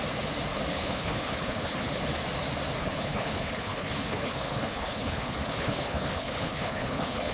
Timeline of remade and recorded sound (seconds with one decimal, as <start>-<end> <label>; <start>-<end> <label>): 0.0-0.7 recorded; 0.7-2.0 remade; 2.0-2.8 recorded; 2.8-7.3 remade